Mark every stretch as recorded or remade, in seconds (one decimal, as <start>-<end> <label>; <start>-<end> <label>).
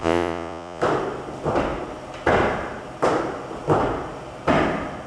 0.0-0.8 remade; 0.8-5.1 recorded